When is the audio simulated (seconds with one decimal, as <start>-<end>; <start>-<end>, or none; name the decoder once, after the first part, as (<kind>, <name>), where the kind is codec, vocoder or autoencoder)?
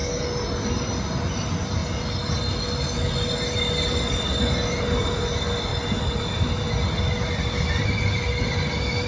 none